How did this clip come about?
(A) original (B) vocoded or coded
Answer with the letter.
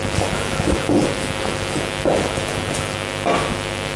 A